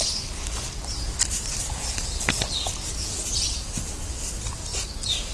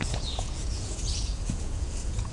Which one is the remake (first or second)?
second